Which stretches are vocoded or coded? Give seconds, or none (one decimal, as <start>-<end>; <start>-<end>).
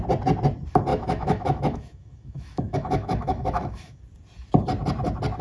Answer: 0.9-4.0